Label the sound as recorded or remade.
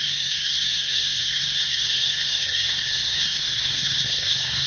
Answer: remade